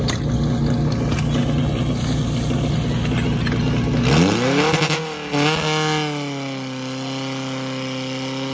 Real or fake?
real